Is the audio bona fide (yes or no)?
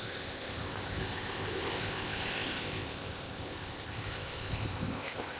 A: no